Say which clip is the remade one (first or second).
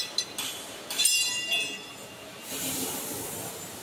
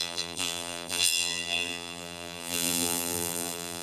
second